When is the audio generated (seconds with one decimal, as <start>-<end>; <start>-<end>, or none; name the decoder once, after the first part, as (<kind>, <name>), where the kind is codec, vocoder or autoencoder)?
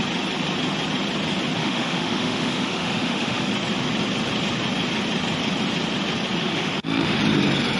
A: 1.6-3.5 (autoencoder, DAC-VAE); 6.4-7.2